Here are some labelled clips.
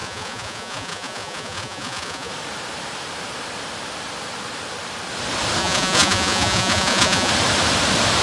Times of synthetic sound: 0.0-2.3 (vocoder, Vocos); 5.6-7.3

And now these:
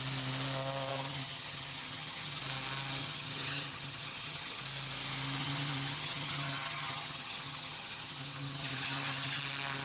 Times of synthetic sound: 0.9-2.4 (vocoder, HiFi-GAN); 3.0-4.6; 5.4-9.4

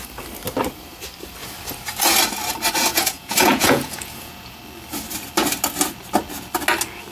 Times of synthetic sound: 2.9-4.6 (vocoder, Vocos)

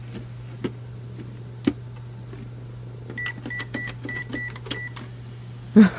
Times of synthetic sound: 3.6-4.2 (codec, DAC)

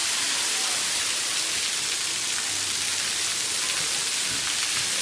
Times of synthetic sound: none

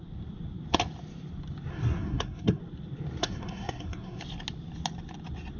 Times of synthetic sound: 1.7-2.6 (codec, SNAC); 3.2-4.2

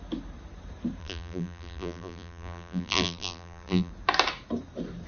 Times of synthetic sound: 1.0-3.9 (vocoder, BigVGAN v2)

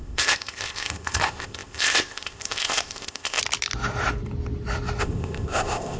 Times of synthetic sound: 0.0-3.4 (codec, ZipCodec); 5.0-6.0